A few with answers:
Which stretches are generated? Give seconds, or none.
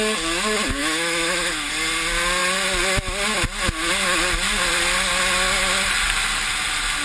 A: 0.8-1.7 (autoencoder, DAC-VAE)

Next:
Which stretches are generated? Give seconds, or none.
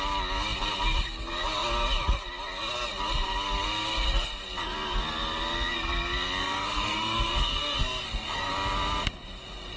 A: 6.4-8.5 (codec, SNAC)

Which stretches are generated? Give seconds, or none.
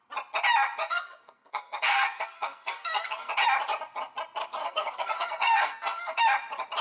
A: 0.8-3.3 (codec, SNAC); 4.6-6.2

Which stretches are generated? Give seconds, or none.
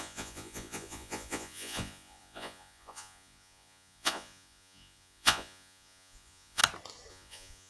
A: 0.0-6.6 (vocoder, Vocos); 7.1-7.7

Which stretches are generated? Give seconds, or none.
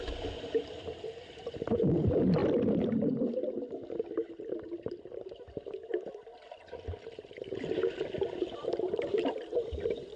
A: 0.0-2.4 (vocoder, BigVGAN v2); 6.6-10.2